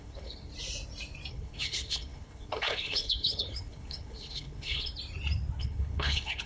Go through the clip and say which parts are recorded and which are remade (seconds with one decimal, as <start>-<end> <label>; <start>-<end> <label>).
0.0-0.5 remade; 0.5-1.3 recorded; 1.3-4.9 remade; 4.9-5.6 recorded; 5.6-6.5 remade